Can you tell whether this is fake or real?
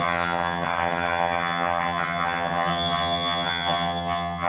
fake